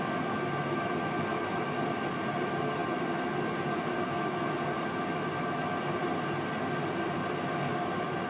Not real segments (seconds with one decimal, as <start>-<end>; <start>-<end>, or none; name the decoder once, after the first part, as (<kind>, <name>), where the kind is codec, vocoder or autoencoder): none